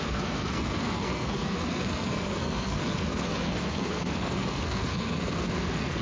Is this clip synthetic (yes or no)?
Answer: yes